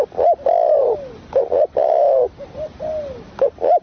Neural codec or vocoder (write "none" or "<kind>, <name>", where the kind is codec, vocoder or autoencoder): none